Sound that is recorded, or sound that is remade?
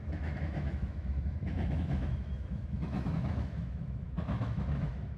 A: remade